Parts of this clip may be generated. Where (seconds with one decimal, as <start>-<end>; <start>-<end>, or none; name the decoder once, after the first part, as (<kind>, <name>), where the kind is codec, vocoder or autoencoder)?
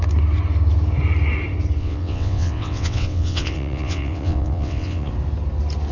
1.8-5.1 (vocoder, WaveNeXt)